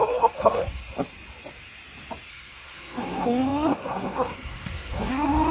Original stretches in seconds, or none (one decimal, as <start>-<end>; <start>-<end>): 0.8-2.3